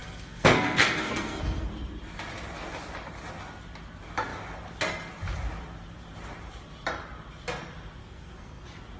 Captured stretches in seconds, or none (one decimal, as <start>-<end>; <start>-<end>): 1.7-8.0; 8.6-9.0